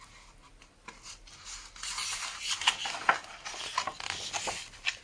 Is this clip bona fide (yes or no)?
yes